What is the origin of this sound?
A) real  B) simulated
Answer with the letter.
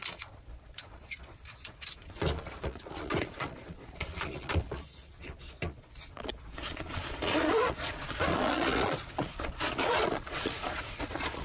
B